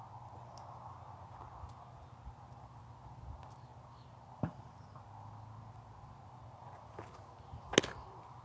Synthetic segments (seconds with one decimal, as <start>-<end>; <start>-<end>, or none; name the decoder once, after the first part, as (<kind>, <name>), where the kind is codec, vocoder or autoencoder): none